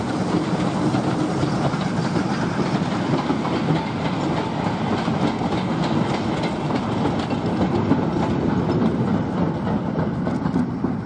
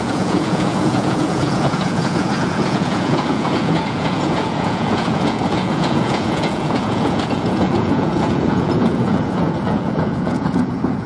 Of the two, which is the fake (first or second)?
second